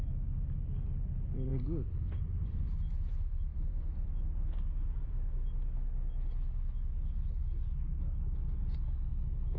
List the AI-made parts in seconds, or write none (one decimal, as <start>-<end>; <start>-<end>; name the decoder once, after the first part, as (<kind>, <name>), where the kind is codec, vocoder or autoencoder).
1.5-2.6 (vocoder, BigVGAN v2); 3.5-5.1